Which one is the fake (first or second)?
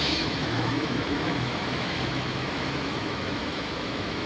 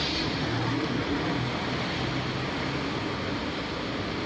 first